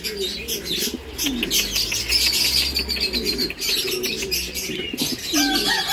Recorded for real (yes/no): yes